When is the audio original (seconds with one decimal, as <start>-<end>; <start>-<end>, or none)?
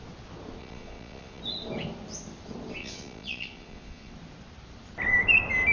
0.0-0.6; 1.4-2.8; 4.1-5.7